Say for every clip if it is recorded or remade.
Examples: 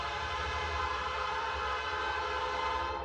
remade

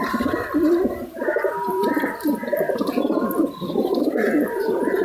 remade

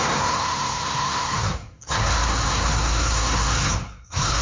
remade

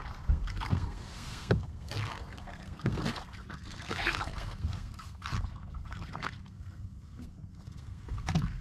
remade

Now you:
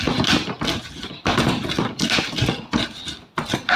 recorded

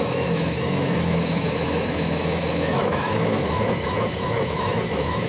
remade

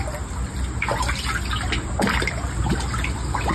recorded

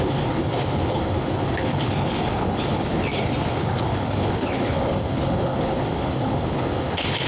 remade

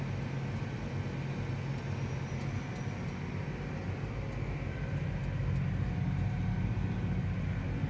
recorded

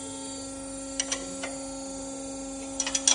recorded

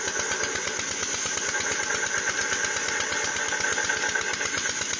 recorded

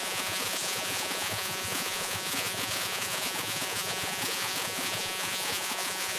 remade